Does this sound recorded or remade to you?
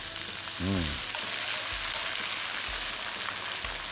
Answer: recorded